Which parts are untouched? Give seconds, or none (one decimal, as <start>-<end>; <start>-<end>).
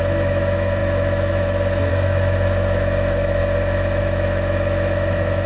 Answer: 3.4-4.0